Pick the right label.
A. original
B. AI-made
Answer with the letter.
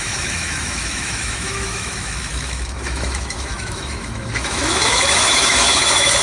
B